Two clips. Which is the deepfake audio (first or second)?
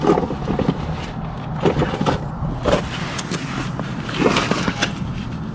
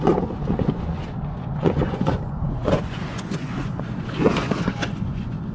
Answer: second